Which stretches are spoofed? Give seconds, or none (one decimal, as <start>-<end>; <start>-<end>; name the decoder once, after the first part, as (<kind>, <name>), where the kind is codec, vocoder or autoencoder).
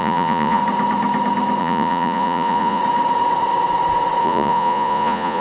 0.0-0.6 (vocoder, Vocos); 1.6-2.8; 4.2-5.4